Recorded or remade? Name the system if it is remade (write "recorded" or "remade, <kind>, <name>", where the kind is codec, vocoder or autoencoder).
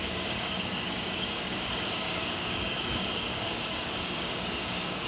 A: remade, codec, DAC